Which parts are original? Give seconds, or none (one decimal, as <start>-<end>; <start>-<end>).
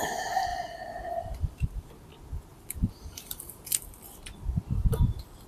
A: 0.0-0.5; 1.9-2.5; 4.0-5.5